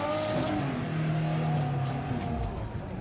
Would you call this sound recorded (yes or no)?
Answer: yes